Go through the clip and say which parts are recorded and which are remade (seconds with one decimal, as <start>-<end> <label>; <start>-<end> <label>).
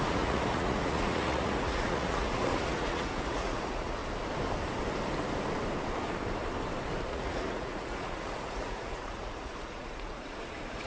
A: 0.0-4.0 remade; 4.0-7.1 recorded; 7.1-10.9 remade